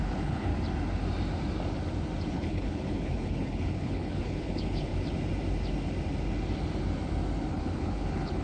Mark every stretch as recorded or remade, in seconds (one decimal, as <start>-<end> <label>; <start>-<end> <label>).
0.0-0.5 remade; 0.5-2.3 recorded; 2.3-4.9 remade; 4.9-7.5 recorded; 7.5-8.4 remade